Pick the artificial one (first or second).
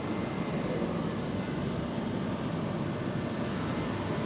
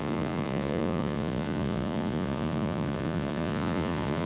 second